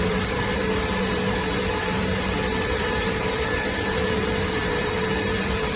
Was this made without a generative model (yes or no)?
no